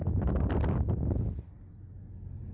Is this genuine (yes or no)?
yes